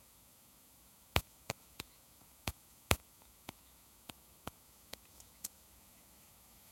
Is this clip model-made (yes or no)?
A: yes